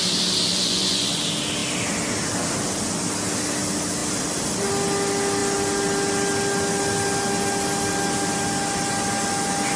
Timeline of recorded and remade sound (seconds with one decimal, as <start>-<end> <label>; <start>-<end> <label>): 0.0-0.6 recorded; 0.6-1.2 remade; 1.2-9.8 recorded